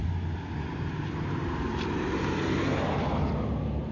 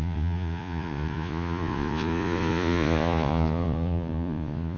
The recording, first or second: first